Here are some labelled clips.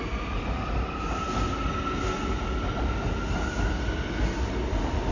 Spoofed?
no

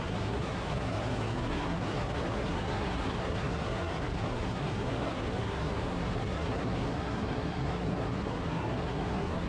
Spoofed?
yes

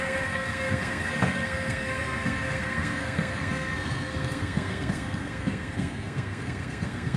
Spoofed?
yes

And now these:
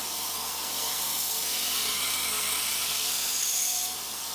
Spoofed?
yes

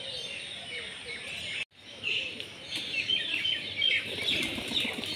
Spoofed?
no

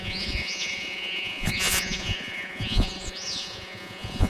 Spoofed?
yes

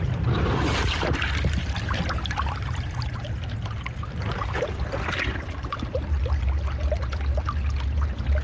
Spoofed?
no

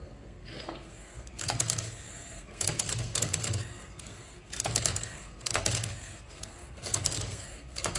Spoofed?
yes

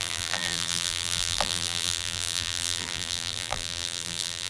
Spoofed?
yes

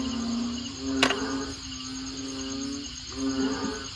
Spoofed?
no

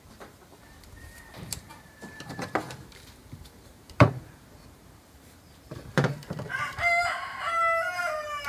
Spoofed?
yes